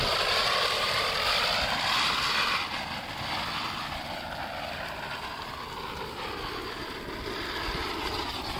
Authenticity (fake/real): real